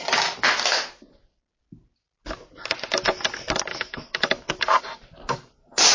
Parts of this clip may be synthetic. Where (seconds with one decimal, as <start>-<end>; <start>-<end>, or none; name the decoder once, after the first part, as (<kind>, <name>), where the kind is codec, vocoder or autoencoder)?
3.7-4.6 (autoencoder, DAC-VAE)